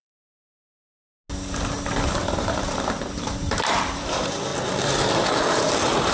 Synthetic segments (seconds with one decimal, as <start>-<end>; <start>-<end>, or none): 0.0-1.0; 1.8-4.5